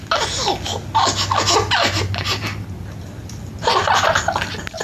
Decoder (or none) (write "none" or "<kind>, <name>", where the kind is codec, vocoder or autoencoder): none